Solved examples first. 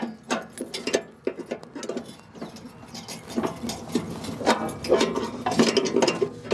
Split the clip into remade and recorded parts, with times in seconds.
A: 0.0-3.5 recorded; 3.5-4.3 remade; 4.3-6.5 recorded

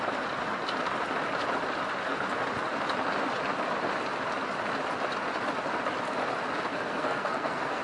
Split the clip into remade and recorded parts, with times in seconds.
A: 0.0-6.7 recorded; 6.7-7.8 remade

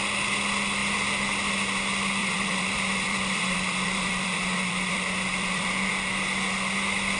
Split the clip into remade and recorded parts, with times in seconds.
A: 0.0-2.2 recorded; 2.2-5.9 remade; 5.9-7.2 recorded

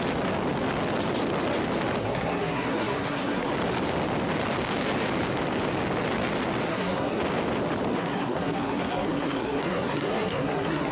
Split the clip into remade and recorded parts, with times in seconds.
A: 0.0-2.0 recorded; 2.0-3.5 remade; 3.5-6.7 recorded; 6.7-7.2 remade; 7.2-7.9 recorded; 7.9-10.9 remade

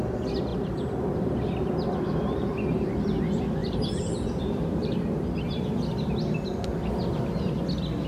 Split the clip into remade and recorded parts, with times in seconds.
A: 0.0-0.5 recorded; 0.5-3.2 remade; 3.2-3.6 recorded; 3.6-5.4 remade; 5.4-8.1 recorded

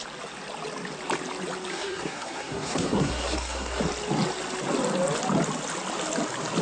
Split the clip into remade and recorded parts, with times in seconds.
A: 0.0-1.7 recorded; 1.7-3.8 remade; 3.8-6.6 recorded

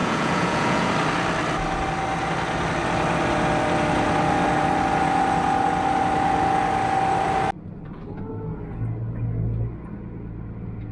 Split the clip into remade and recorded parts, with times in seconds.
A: 0.0-0.9 remade; 0.9-10.9 recorded